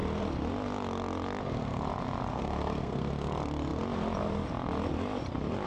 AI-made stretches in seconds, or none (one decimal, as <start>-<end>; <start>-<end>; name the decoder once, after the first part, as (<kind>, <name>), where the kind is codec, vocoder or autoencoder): 2.3-3.1 (codec, SNAC)